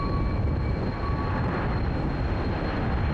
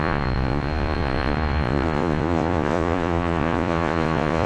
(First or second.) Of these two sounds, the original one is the first